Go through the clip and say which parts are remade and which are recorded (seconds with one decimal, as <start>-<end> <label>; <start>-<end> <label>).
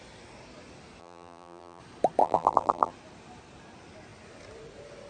0.0-1.0 recorded; 1.0-1.8 remade; 1.8-2.2 recorded; 2.2-2.9 remade; 2.9-5.1 recorded